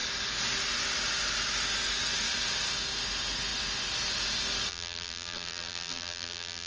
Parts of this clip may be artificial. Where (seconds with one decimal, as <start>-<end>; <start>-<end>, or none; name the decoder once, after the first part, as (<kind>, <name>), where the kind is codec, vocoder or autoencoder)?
4.7-6.7 (vocoder, BigVGAN v2)